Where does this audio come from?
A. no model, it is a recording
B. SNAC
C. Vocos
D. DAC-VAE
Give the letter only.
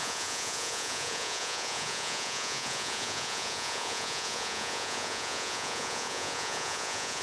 C